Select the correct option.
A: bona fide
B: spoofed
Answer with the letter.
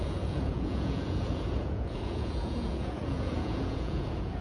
B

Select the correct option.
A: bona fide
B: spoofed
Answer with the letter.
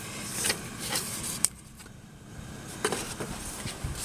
B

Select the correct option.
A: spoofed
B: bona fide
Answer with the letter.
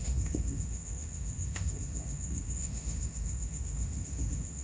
A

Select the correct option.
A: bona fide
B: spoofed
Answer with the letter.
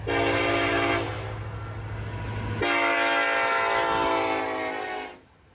A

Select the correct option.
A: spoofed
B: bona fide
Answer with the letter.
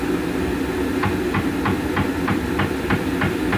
B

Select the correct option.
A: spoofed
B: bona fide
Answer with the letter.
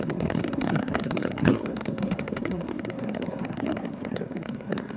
A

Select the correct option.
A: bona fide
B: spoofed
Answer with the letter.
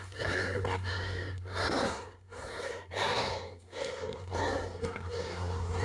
B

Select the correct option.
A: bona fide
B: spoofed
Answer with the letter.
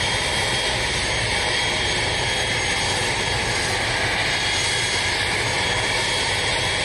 A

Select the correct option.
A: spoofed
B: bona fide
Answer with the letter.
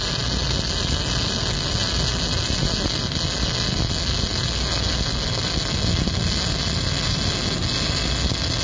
B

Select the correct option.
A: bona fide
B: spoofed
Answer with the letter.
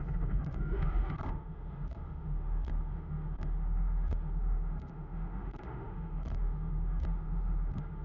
B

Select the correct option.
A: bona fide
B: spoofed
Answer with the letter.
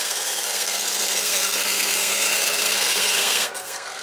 B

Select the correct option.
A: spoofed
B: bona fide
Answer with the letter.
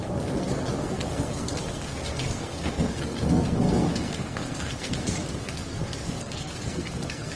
A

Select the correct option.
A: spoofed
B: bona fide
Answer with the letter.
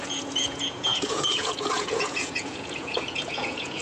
A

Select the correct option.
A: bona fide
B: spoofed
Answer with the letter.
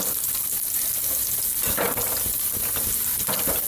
A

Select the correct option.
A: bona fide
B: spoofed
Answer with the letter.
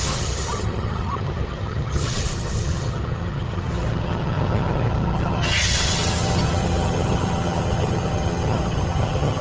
B